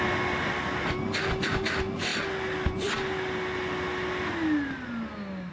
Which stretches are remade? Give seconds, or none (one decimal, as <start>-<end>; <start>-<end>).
none